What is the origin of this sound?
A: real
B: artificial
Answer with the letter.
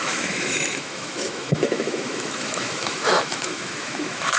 B